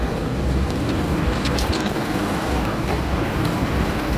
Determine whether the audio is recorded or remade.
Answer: remade